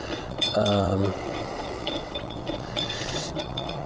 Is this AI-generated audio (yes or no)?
yes